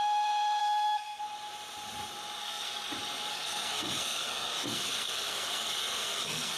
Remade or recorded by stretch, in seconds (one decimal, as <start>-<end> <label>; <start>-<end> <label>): 0.0-0.6 recorded; 0.6-1.2 remade; 1.2-2.4 recorded; 2.4-2.9 remade; 2.9-3.3 recorded; 3.3-6.6 remade